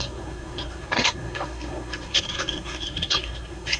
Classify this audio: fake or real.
fake